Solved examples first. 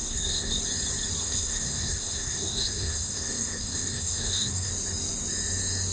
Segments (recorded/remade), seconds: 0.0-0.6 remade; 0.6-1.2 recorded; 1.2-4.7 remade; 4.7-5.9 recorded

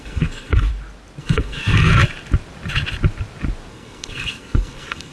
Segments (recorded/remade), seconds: 0.0-0.7 remade; 0.7-1.2 recorded; 1.2-1.9 remade; 1.9-3.7 recorded; 3.7-5.1 remade

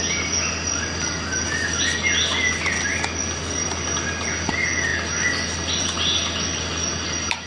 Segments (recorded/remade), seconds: 0.0-7.5 recorded